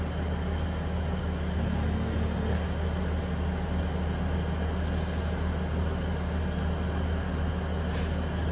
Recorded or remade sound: recorded